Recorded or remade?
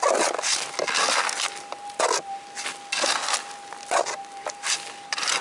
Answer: recorded